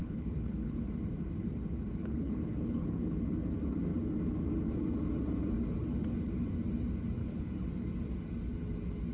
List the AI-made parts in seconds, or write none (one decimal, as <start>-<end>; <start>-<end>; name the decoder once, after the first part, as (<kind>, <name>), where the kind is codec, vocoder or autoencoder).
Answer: 0.0-0.8 (codec, HILCodec); 2.0-3.2; 7.2-7.7